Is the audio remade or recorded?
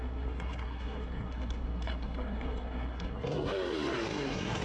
remade